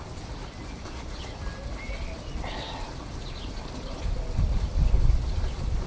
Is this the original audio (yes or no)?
yes